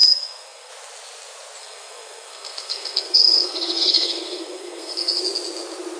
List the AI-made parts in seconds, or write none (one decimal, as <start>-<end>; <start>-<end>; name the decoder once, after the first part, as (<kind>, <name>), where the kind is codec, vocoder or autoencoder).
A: 0.0-0.7 (codec, SNAC); 1.6-5.2

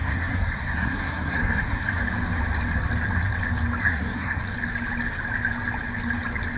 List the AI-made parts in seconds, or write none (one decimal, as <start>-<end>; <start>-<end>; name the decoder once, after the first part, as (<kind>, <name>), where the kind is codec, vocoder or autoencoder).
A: 0.0-2.0 (codec, SNAC); 3.8-4.4